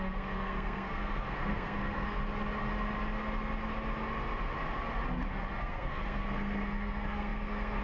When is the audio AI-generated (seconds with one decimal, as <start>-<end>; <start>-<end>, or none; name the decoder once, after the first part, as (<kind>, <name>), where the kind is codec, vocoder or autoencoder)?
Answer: 0.0-2.2 (codec, SNAC); 5.6-7.8